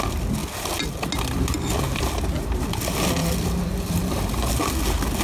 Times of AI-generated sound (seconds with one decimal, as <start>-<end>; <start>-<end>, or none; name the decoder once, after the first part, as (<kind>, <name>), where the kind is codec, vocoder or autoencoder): 3.2-4.5 (vocoder, BigVGAN v2)